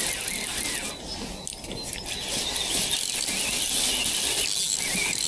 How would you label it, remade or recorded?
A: recorded